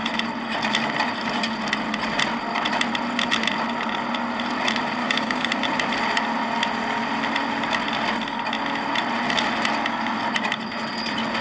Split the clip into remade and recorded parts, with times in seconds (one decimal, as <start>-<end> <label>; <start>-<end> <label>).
0.0-5.0 recorded; 5.0-5.5 remade; 5.5-11.4 recorded